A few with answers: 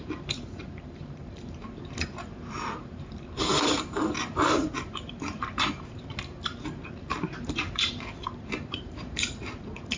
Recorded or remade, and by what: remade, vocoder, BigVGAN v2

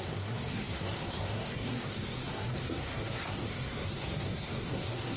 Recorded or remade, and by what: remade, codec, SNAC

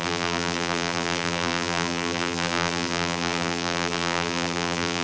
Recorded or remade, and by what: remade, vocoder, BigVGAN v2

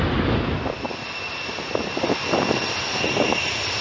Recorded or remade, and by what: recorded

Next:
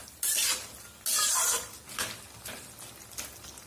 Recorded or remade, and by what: recorded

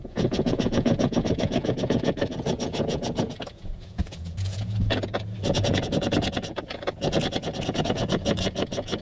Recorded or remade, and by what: remade, vocoder, Vocos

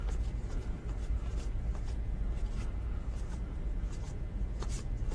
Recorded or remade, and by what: recorded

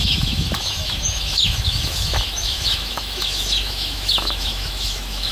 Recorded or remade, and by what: remade, autoencoder, DAC-VAE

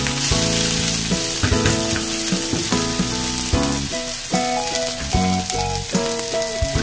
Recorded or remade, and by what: recorded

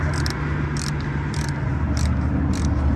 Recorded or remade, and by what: recorded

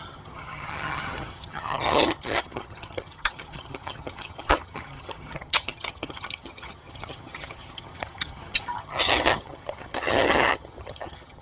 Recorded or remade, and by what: remade, vocoder, HiFi-GAN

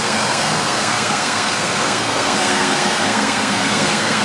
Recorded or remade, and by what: remade, codec, SNAC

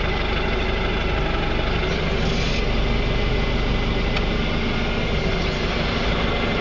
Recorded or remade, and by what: recorded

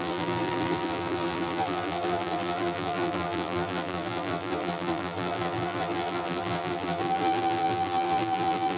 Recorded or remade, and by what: remade, vocoder, BigVGAN v2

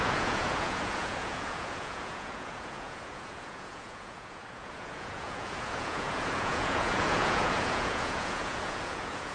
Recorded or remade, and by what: remade, vocoder, Vocos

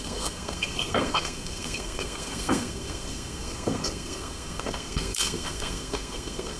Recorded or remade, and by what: remade, codec, SNAC